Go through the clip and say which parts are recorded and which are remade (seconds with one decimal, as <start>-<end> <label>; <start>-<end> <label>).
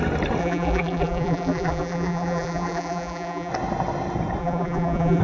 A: 0.0-0.4 recorded; 0.4-3.5 remade; 3.5-4.4 recorded; 4.4-5.2 remade